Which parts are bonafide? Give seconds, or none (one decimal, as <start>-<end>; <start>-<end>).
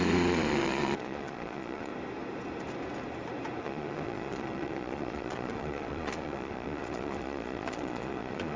1.9-3.6